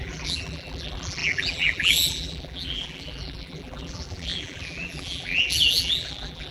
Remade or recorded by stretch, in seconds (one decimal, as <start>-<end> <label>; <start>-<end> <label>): 0.0-6.5 remade